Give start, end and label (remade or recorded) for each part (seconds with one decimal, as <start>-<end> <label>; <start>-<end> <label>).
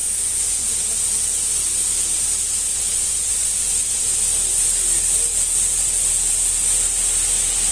0.0-0.7 remade; 0.7-2.7 recorded; 2.7-4.0 remade; 4.0-7.7 recorded